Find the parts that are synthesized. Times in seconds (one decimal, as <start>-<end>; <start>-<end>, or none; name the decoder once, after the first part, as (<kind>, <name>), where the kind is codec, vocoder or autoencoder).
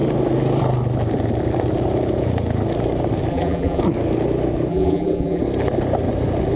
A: 3.3-3.8 (vocoder, BigVGAN v2); 4.7-5.4